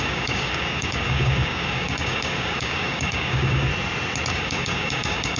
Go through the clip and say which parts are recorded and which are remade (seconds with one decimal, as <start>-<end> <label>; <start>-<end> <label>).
0.0-3.7 remade; 3.7-4.3 recorded; 4.3-5.4 remade